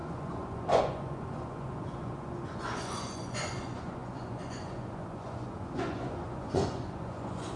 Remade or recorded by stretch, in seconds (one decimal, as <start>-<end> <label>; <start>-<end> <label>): 0.0-7.6 remade